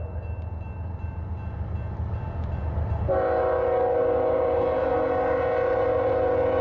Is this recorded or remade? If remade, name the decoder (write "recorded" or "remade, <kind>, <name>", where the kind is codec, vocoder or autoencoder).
recorded